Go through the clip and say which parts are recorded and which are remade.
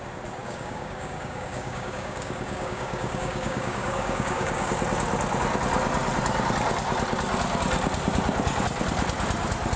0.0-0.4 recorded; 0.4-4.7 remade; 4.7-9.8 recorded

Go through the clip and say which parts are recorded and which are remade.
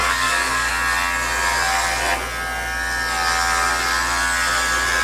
0.0-0.7 remade; 0.7-5.0 recorded